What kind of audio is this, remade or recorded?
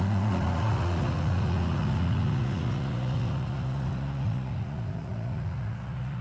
remade